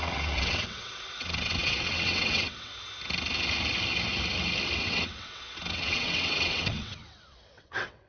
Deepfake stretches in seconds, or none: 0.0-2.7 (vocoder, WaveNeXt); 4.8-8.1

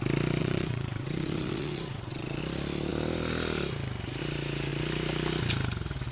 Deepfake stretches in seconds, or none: 0.4-2.4 (vocoder, WaveNeXt)

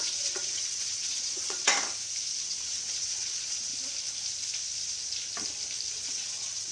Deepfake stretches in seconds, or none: 0.0-1.7 (vocoder, WaveNeXt); 2.4-3.7; 5.9-6.7

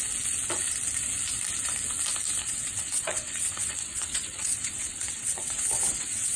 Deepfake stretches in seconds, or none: 2.4-6.4 (vocoder, WaveNeXt)

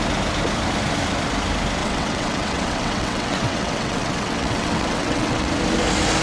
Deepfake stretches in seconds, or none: 1.8-5.5 (vocoder, WaveNeXt)

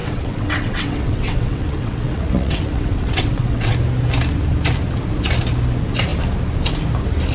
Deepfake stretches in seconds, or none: 0.0-3.7 (vocoder, WaveNeXt)

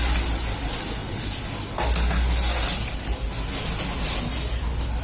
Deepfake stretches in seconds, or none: none